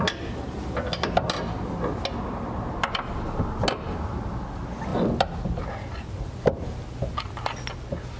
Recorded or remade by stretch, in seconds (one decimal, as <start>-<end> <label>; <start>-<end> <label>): 0.0-8.2 recorded